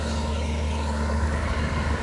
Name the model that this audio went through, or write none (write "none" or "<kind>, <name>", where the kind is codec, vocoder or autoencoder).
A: codec, DAC